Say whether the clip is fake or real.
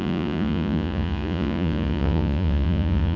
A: fake